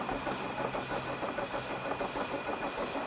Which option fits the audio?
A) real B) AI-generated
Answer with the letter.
A